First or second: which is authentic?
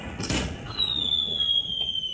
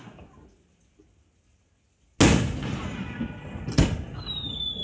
second